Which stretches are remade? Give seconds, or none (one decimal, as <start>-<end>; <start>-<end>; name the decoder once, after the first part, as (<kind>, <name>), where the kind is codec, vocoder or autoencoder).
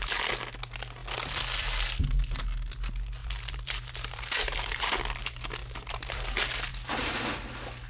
3.2-5.0 (vocoder, BigVGAN v2); 5.6-6.3; 6.7-7.2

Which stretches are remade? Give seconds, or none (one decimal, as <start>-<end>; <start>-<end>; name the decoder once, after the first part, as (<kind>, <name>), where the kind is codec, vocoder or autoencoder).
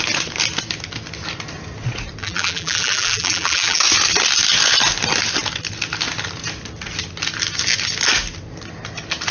2.2-3.8 (vocoder, BigVGAN v2)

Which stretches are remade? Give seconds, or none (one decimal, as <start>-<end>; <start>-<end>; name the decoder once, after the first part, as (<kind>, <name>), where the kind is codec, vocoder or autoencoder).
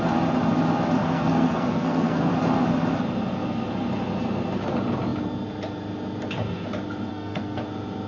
1.0-2.3 (codec, SNAC); 7.1-7.6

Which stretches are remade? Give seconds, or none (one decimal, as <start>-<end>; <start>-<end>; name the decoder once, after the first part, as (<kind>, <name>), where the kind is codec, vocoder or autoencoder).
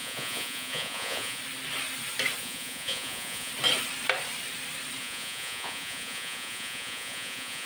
0.0-1.4 (vocoder, Vocos); 2.4-3.5; 5.0-7.7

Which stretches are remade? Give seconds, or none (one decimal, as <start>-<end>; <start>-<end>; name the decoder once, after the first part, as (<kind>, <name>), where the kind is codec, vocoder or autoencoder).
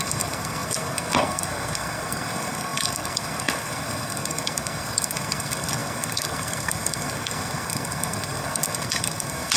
0.0-9.6 (codec, SNAC)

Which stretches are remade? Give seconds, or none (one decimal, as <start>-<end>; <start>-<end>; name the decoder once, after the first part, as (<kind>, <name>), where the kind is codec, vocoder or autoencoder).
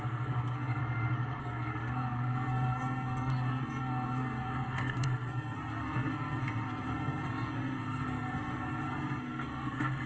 0.0-0.8 (codec, SNAC); 1.4-10.1